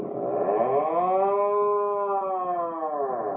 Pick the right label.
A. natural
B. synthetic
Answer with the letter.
A